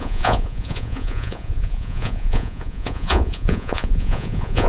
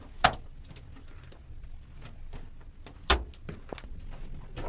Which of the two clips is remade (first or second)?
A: first